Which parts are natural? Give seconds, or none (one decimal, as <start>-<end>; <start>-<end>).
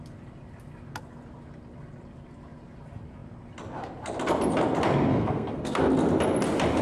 0.0-5.1; 5.8-6.8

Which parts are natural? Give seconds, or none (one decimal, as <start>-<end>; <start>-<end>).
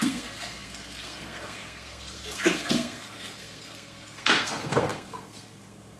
none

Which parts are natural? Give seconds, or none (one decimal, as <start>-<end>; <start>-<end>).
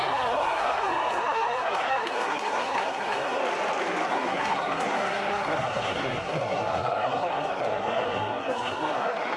3.4-4.1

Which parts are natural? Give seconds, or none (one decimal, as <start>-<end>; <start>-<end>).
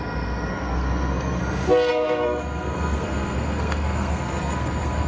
0.0-0.5; 1.4-1.9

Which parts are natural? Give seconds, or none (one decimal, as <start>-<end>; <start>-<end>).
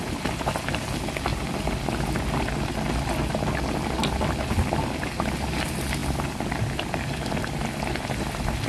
0.0-8.7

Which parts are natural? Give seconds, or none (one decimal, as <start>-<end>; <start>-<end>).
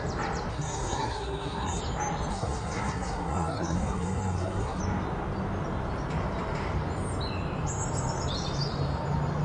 0.0-0.5; 1.8-2.3; 4.8-9.4